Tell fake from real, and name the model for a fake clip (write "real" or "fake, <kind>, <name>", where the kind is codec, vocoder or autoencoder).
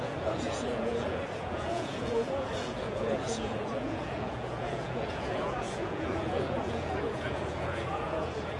fake, vocoder, Vocos